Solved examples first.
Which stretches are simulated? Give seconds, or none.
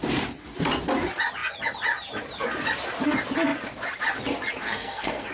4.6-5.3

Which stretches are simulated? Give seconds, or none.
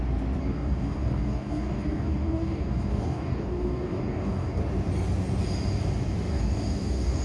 0.4-4.6; 6.3-7.2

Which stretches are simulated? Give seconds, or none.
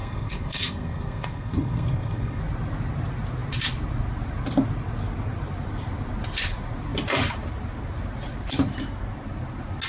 0.0-2.4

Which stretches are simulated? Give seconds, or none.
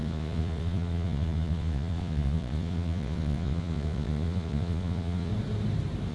0.0-5.3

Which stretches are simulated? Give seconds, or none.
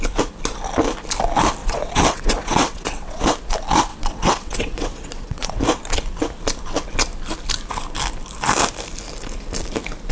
1.6-3.2; 3.9-5.6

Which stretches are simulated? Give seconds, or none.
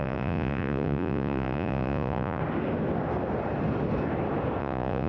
0.0-2.4; 4.6-5.1